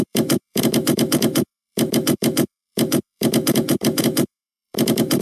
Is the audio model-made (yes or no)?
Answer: yes